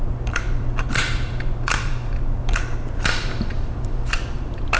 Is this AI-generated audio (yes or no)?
yes